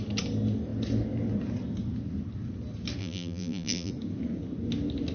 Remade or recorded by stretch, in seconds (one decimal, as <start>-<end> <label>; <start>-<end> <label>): 0.0-3.0 recorded; 3.0-3.9 remade; 3.9-5.1 recorded